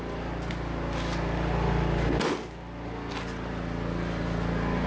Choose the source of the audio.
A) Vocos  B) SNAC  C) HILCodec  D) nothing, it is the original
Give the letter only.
D